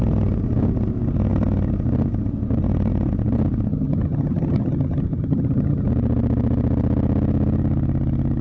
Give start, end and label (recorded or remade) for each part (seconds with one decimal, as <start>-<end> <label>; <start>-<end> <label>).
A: 0.0-3.7 recorded; 3.7-5.9 remade; 5.9-8.4 recorded